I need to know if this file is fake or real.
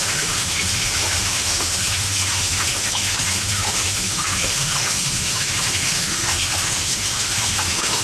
fake